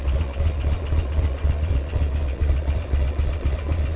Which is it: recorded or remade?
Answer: remade